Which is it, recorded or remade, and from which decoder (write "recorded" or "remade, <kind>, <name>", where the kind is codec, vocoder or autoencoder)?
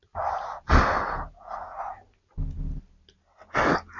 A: recorded